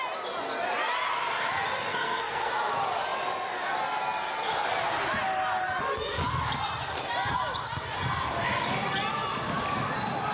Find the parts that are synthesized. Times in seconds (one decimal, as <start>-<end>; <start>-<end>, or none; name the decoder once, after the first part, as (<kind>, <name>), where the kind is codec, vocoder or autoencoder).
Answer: 1.9-2.5 (codec, SNAC)